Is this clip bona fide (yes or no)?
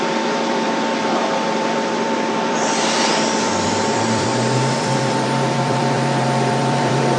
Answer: no